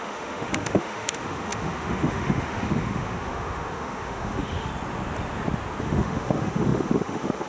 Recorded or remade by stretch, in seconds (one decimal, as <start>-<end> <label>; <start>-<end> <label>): 0.0-4.7 remade; 4.7-5.8 recorded; 5.8-7.5 remade